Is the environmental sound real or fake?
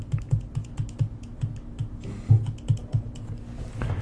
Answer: real